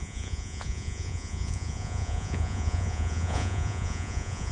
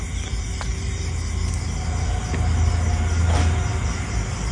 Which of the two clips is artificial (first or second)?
first